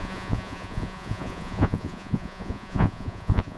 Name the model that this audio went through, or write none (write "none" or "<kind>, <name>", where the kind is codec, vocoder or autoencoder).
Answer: vocoder, Vocos